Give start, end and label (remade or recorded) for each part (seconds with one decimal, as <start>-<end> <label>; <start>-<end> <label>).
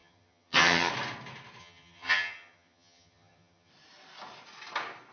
0.0-0.9 remade; 0.9-1.6 recorded; 1.6-3.7 remade; 3.7-5.1 recorded